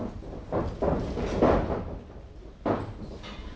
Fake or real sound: real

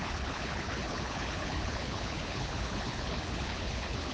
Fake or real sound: fake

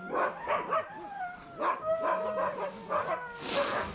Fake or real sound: real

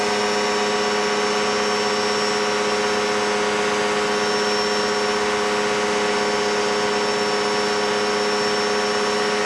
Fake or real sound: real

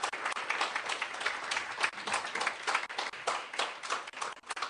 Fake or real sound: real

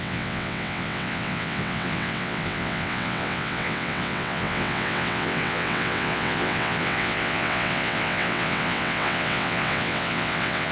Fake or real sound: fake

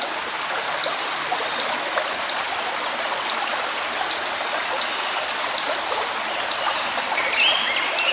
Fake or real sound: real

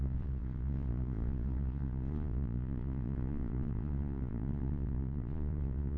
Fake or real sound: fake